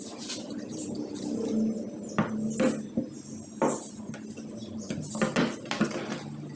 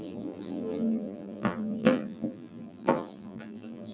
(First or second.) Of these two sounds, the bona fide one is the first